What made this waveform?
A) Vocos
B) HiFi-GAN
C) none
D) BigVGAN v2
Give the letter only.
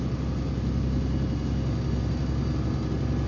C